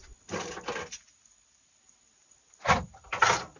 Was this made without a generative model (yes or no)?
yes